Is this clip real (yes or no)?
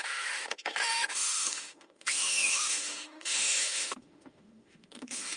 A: no